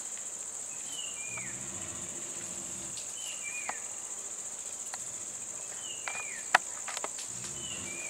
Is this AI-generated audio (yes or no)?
no